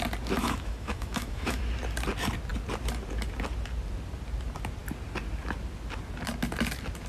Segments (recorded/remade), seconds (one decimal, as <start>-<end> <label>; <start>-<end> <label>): 0.0-0.4 recorded; 0.4-1.6 remade; 1.6-7.1 recorded